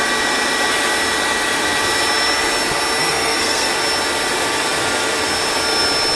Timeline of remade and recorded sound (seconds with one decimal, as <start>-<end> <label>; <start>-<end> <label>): 0.0-3.0 recorded; 3.0-3.7 remade; 3.7-6.2 recorded